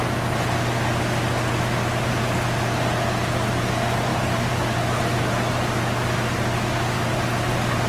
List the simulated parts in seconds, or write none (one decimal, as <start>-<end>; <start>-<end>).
4.1-4.7